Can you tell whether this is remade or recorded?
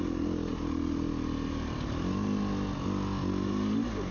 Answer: recorded